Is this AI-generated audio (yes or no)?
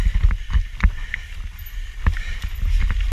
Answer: no